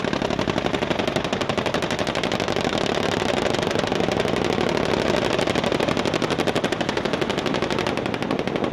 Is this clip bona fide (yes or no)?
yes